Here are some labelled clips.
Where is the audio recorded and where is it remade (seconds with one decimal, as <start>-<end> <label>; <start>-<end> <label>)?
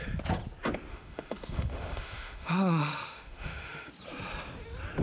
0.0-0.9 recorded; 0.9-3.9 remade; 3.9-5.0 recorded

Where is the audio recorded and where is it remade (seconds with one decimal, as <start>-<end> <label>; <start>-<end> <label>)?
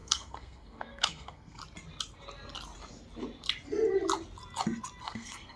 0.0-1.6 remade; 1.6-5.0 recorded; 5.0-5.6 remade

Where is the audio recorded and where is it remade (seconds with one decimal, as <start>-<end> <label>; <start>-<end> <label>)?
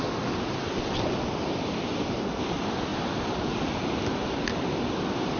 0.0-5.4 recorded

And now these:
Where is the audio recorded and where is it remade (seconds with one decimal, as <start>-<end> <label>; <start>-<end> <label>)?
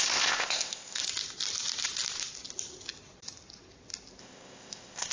0.0-1.1 remade; 1.1-4.2 recorded; 4.2-5.1 remade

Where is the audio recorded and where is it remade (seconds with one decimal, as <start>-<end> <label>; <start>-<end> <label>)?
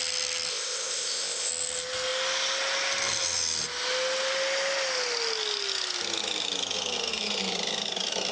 0.0-0.5 recorded; 0.5-1.5 remade; 1.5-8.3 recorded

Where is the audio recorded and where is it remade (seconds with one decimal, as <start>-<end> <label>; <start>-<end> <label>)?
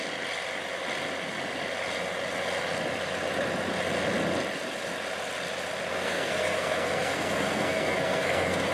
0.0-5.9 recorded; 5.9-8.7 remade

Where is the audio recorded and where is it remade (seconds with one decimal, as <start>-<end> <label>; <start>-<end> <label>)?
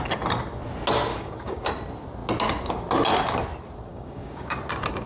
0.0-1.1 recorded; 1.1-1.7 remade; 1.7-3.9 recorded; 3.9-4.6 remade; 4.6-5.1 recorded